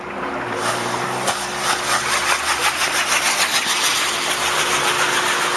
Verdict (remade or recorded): recorded